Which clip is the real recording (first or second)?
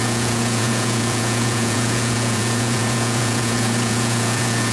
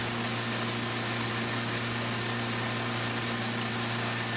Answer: second